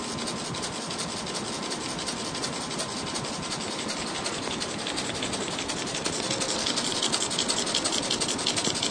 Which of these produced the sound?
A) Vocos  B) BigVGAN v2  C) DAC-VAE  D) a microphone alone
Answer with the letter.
D